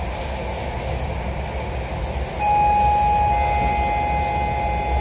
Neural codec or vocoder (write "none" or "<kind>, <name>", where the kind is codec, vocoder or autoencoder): none